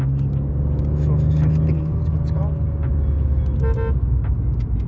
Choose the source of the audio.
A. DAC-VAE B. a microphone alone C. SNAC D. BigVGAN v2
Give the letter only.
B